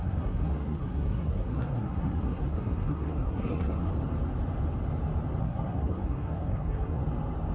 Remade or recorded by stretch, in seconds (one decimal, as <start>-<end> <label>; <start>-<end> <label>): 0.0-3.9 remade; 3.9-5.4 recorded; 5.4-7.0 remade; 7.0-7.5 recorded